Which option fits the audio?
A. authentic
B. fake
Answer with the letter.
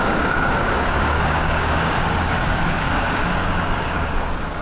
B